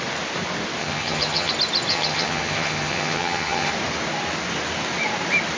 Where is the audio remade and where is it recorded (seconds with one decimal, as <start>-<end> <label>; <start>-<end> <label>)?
0.0-0.8 recorded; 0.8-1.5 remade; 1.5-1.9 recorded; 1.9-3.7 remade; 3.7-5.6 recorded